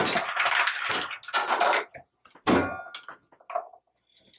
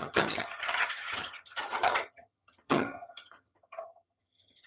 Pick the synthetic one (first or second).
second